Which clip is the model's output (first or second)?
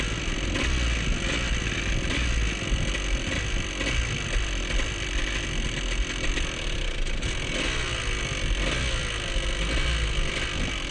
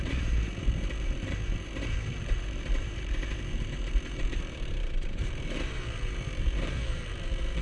second